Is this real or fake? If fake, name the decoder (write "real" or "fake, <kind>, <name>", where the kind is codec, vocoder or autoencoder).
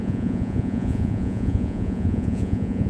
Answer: fake, vocoder, Vocos